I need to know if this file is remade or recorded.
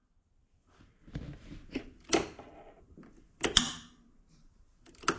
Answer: recorded